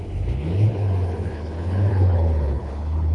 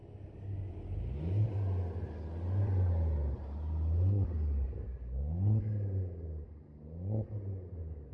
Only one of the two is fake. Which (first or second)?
first